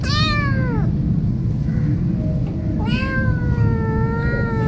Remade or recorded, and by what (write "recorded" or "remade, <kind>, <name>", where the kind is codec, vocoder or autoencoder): recorded